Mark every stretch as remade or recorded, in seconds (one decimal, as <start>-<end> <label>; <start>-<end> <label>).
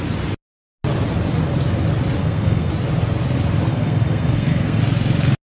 0.0-2.2 recorded; 2.2-2.7 remade; 2.7-3.7 recorded; 3.7-4.8 remade; 4.8-5.5 recorded